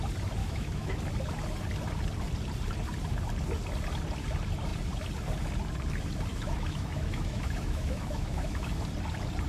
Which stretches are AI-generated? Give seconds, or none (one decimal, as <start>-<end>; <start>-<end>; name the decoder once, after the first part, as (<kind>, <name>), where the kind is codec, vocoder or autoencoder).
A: 0.4-1.0 (autoencoder, DAC-VAE); 6.3-8.7